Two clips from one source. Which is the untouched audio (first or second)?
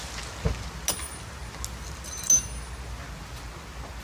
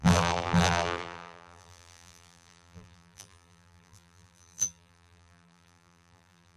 first